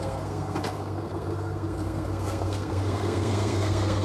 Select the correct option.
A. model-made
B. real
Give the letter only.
A